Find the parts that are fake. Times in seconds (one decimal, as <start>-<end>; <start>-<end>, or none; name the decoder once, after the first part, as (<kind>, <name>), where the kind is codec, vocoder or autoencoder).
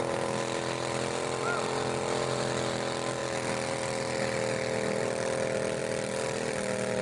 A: none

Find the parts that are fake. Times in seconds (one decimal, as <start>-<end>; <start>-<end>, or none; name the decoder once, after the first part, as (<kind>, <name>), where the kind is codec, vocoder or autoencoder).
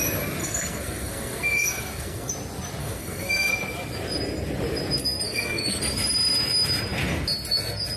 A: 0.4-2.3 (codec, SNAC); 2.8-3.5; 5.0-5.8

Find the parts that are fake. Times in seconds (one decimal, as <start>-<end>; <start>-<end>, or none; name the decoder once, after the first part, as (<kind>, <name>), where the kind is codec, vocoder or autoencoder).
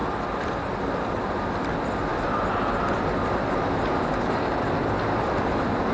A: none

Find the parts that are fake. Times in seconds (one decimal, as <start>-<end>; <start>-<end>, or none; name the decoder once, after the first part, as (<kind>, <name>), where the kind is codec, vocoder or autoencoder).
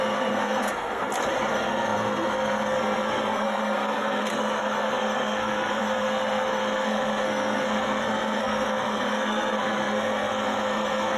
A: 0.0-1.0 (codec, SNAC); 1.5-11.2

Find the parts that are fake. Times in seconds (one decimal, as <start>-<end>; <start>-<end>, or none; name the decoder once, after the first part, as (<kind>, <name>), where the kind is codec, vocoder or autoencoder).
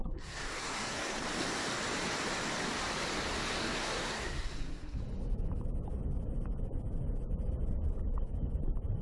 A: 0.0-1.2 (codec, SNAC); 3.6-5.0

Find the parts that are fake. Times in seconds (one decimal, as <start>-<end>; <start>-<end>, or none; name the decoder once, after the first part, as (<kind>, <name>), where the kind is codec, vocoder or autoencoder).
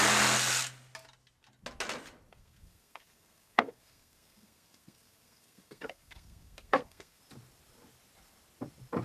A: 2.3-7.2 (codec, SNAC)